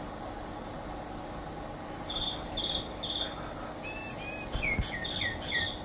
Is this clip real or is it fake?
real